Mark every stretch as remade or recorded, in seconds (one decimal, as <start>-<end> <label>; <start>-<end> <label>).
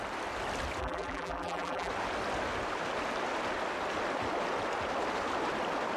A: 0.0-0.8 recorded; 0.8-1.9 remade; 1.9-6.0 recorded